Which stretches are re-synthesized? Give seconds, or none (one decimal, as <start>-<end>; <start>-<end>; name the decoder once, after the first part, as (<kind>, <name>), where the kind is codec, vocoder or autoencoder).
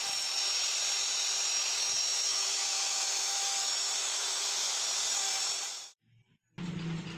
2.0-4.8 (autoencoder, DAC-VAE)